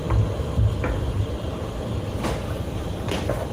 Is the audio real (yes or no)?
yes